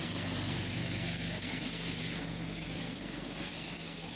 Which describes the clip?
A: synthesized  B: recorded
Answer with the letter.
A